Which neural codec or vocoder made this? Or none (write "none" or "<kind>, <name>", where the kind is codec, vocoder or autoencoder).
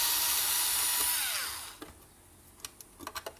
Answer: none